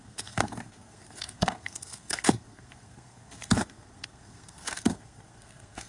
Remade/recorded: remade